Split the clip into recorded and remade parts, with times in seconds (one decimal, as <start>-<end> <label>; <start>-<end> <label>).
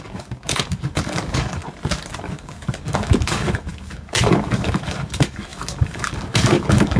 0.0-1.6 remade; 1.6-2.2 recorded; 2.2-7.0 remade